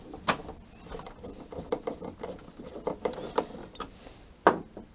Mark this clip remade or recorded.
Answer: recorded